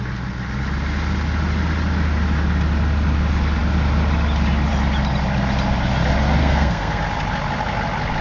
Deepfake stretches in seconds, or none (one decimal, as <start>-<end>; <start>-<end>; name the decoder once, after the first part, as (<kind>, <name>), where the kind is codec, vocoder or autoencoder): 6.4-7.0 (codec, SNAC)